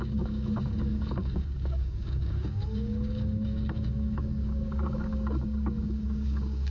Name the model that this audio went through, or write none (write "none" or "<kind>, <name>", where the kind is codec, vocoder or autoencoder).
codec, DAC